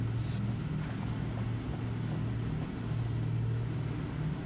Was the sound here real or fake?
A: real